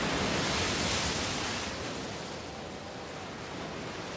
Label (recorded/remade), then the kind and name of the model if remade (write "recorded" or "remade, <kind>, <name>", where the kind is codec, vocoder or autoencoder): recorded